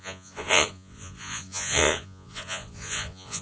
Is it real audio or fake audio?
fake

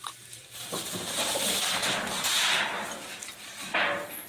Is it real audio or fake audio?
fake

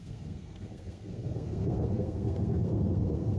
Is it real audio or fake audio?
fake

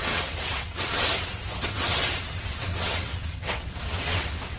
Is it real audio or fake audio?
fake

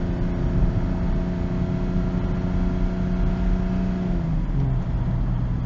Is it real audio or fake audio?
real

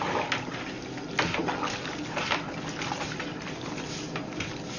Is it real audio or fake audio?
real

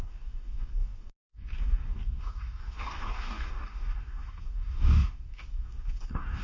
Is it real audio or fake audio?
fake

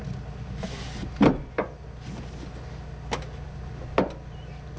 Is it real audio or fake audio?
real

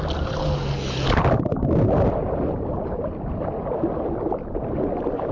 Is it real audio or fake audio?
real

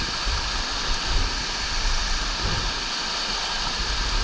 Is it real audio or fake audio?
real